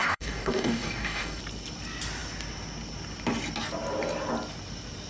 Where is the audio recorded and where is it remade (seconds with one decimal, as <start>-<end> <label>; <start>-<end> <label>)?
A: 0.0-1.4 remade; 1.4-5.1 recorded